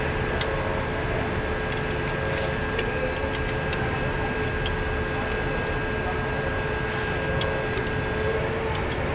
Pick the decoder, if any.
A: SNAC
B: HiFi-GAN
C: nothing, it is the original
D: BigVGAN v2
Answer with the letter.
C